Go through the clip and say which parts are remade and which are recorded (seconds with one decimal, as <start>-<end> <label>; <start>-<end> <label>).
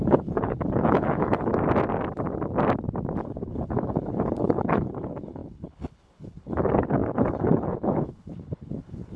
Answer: 0.0-1.5 remade; 1.5-3.2 recorded; 3.2-9.2 remade